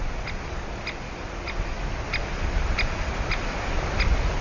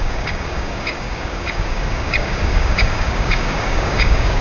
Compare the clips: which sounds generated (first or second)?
second